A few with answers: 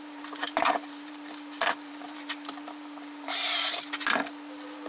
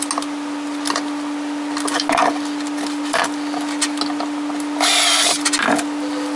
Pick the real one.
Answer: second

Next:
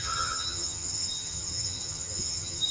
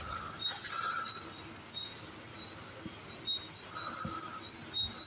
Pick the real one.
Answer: second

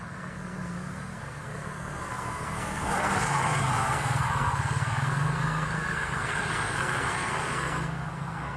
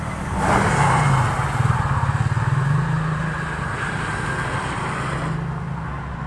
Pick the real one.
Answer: second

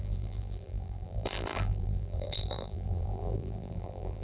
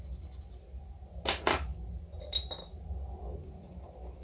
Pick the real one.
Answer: second